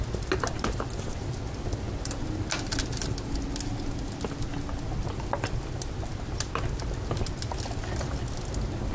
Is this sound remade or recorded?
recorded